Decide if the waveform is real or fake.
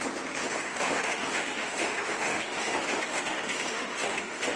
fake